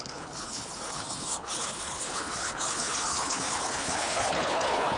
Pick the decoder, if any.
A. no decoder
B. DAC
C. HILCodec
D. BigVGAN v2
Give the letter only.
C